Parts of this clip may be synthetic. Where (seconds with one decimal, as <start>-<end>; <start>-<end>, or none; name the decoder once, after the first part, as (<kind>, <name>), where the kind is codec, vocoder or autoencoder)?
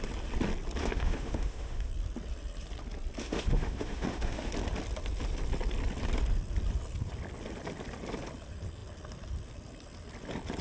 0.8-1.9 (autoencoder, DAC-VAE); 3.2-4.5